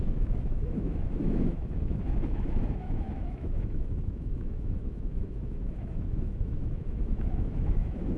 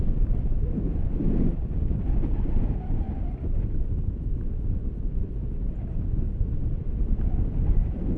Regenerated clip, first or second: first